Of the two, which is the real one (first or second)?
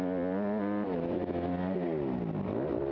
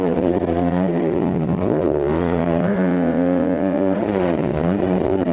first